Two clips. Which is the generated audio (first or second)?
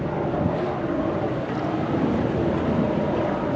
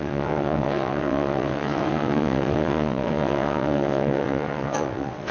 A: second